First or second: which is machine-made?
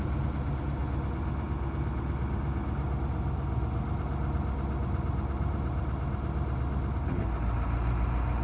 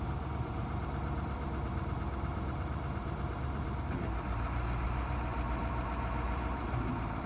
second